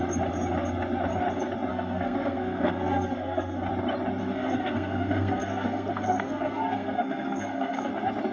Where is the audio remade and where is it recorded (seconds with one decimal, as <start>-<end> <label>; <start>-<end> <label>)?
0.0-1.7 recorded; 1.7-3.7 remade; 3.7-4.2 recorded; 4.2-7.9 remade; 7.9-8.3 recorded